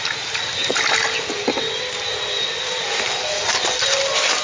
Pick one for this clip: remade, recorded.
recorded